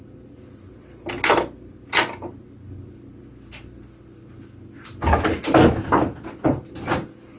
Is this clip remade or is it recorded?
recorded